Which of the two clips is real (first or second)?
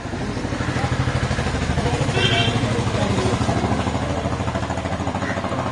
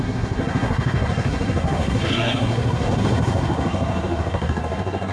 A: first